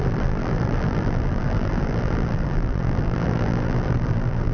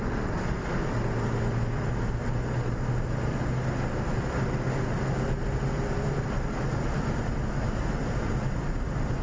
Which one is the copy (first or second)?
first